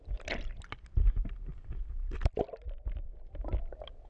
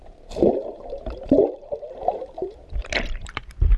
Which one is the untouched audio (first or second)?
first